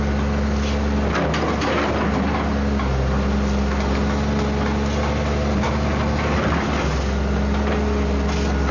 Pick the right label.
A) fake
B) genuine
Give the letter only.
B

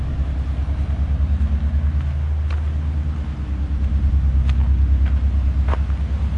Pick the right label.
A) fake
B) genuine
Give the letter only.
B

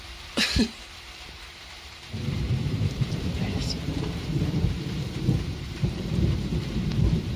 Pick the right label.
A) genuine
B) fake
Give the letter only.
B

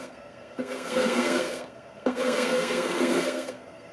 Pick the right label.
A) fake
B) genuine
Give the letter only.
A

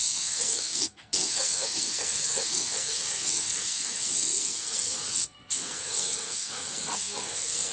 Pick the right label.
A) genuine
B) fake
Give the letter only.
B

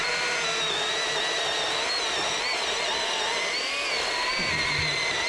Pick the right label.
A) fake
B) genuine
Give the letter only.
B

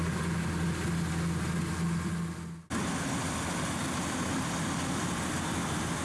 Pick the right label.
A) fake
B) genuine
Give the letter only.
B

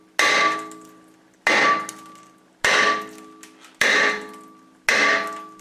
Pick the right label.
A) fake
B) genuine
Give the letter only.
B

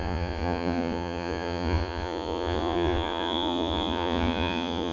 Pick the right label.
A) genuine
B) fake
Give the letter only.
B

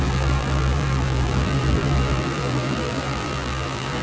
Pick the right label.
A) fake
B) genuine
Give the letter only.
A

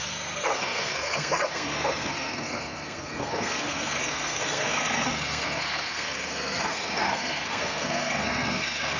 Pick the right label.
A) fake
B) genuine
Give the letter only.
A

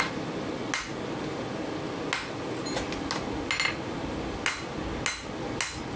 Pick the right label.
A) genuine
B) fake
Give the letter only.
A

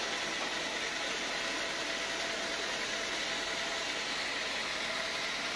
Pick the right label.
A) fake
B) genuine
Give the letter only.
B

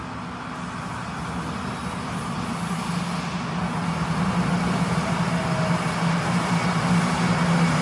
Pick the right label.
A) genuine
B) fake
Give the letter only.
A